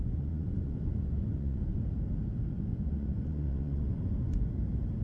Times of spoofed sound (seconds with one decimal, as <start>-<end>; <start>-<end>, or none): 0.0-1.8; 2.7-4.5